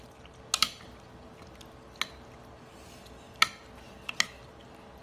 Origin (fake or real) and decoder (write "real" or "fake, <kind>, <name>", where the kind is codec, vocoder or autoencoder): real